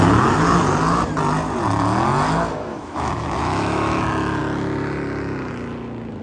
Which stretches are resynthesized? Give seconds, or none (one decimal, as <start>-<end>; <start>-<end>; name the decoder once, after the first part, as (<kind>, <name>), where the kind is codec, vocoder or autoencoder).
2.7-4.0 (autoencoder, DAC-VAE)